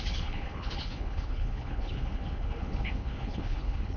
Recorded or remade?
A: remade